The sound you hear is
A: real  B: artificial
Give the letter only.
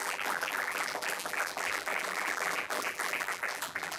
B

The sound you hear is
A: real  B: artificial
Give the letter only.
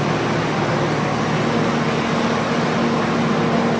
A